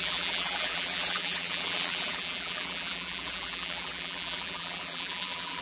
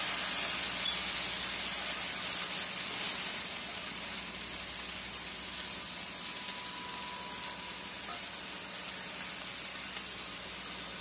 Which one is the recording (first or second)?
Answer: second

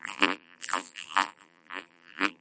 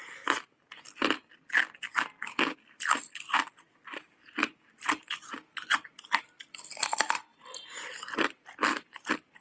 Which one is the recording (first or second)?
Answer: second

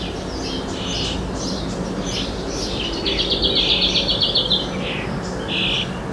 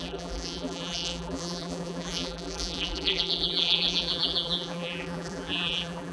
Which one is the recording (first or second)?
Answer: first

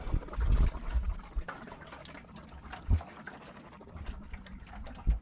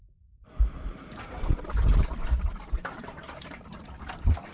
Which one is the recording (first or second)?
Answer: first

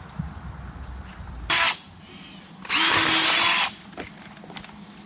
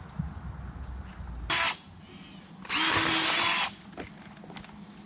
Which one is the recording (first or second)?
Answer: second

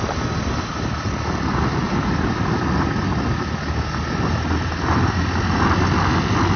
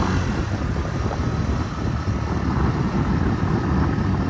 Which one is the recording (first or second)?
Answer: first